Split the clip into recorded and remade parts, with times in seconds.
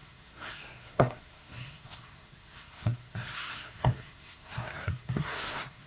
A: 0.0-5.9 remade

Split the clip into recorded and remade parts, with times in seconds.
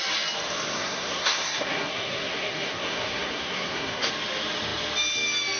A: 0.0-0.7 recorded; 0.7-4.1 remade; 4.1-5.6 recorded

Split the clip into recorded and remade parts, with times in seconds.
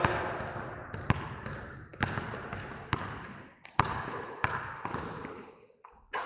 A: 0.0-6.3 recorded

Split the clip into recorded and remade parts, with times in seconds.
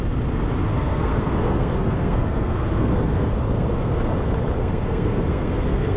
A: 0.0-0.7 recorded; 0.7-4.0 remade; 4.0-4.6 recorded; 4.6-6.0 remade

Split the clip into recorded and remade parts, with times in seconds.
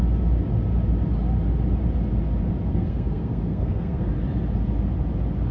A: 0.0-2.7 recorded; 2.7-4.1 remade; 4.1-5.5 recorded